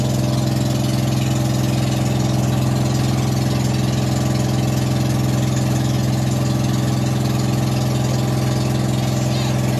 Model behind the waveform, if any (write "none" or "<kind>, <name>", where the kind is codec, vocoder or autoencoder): none